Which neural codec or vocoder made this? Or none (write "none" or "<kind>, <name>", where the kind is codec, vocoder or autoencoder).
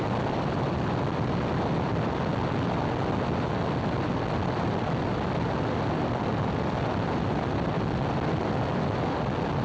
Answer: none